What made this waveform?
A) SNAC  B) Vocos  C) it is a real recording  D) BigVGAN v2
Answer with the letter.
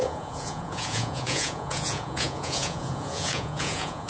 B